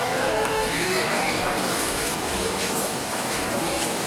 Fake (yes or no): yes